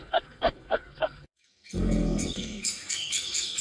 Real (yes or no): no